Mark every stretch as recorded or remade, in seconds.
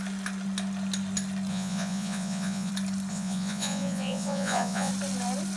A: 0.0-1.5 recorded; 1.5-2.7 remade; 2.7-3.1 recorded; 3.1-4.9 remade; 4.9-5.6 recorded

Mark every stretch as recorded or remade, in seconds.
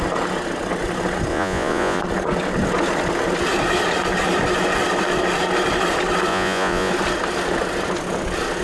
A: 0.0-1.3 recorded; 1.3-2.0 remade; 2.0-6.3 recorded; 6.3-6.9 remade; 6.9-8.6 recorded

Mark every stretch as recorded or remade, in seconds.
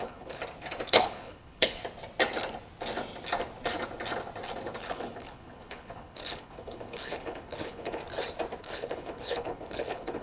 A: 0.0-0.4 remade; 0.4-0.9 recorded; 0.9-1.8 remade; 1.8-4.8 recorded; 4.8-8.0 remade; 8.0-8.6 recorded; 8.6-10.2 remade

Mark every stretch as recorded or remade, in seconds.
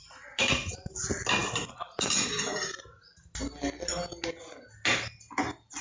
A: 0.0-5.8 recorded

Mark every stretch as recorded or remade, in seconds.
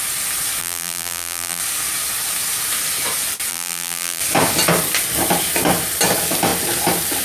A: 0.0-0.6 recorded; 0.6-1.6 remade; 1.6-3.5 recorded; 3.5-4.2 remade; 4.2-7.2 recorded